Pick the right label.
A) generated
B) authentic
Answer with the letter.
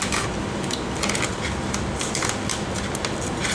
B